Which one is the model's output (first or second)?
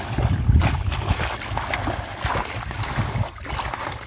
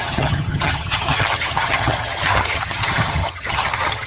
second